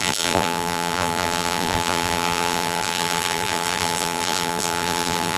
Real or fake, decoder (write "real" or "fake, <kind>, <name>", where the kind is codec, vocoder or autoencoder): fake, vocoder, BigVGAN v2